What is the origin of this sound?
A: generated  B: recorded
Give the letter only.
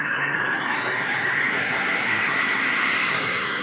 A